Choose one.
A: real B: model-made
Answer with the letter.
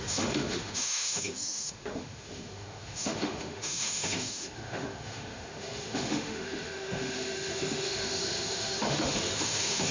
B